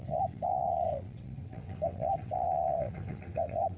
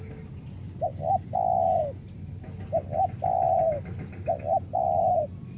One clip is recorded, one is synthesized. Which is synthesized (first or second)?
first